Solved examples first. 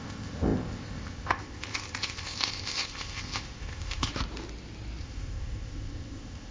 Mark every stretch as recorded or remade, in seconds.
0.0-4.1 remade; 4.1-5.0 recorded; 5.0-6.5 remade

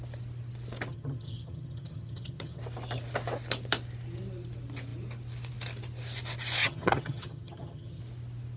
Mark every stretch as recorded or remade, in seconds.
0.0-0.9 recorded; 0.9-2.6 remade; 2.6-6.6 recorded; 6.6-8.0 remade; 8.0-8.6 recorded

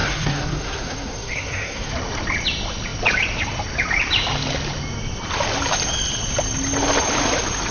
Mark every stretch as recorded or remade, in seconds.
0.0-1.9 remade; 1.9-7.7 recorded

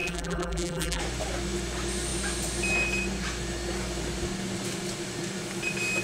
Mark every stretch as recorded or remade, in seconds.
0.0-1.0 remade; 1.0-6.0 recorded